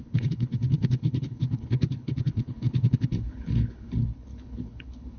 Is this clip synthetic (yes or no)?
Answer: yes